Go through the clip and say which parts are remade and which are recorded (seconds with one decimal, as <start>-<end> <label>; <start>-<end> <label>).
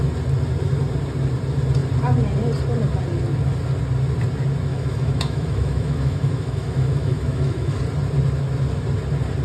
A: 0.0-4.7 recorded; 4.7-7.8 remade; 7.8-9.4 recorded